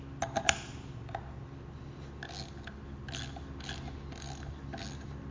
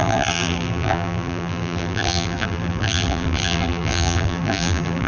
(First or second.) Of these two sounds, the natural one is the first